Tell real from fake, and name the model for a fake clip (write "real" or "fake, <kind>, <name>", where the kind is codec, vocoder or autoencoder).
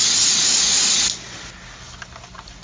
real